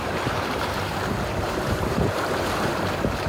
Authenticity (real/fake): fake